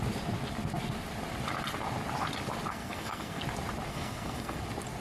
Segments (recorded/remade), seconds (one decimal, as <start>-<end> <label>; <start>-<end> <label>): 0.0-2.7 recorded; 2.7-3.4 remade; 3.4-3.9 recorded; 3.9-4.6 remade; 4.6-5.0 recorded